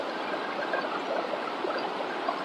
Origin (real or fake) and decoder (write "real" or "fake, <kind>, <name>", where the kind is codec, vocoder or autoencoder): real